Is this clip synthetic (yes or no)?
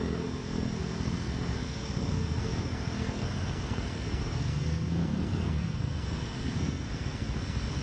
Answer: yes